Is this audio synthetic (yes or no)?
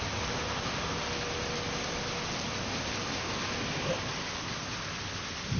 no